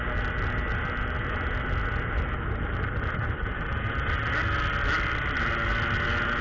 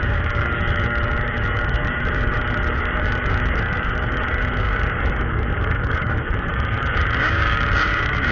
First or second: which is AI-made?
second